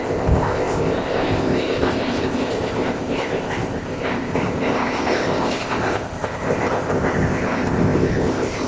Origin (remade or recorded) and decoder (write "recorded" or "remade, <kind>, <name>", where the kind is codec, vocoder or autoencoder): remade, codec, ZipCodec